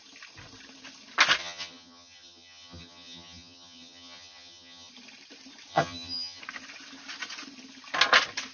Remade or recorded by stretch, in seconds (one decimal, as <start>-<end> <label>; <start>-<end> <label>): 0.0-1.4 recorded; 1.4-4.9 remade; 4.9-5.7 recorded; 5.7-6.4 remade; 6.4-8.5 recorded